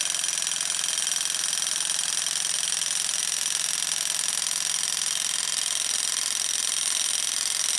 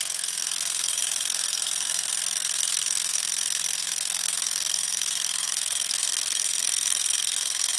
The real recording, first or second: first